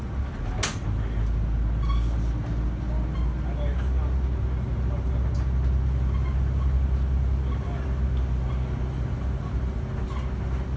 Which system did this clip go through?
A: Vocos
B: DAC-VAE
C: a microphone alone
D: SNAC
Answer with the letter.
C